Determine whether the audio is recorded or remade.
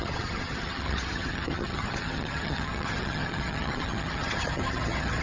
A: remade